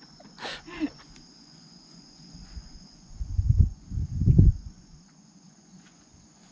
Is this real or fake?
fake